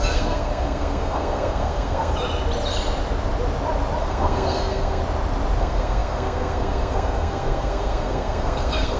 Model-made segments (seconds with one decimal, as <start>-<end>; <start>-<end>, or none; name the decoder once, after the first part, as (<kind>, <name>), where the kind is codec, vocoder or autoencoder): 0.0-2.1 (codec, SNAC); 4.0-5.0; 5.6-9.0